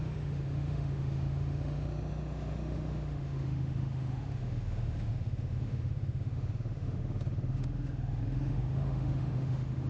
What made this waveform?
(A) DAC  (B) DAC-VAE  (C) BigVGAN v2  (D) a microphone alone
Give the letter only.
B